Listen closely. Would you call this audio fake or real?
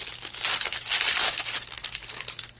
real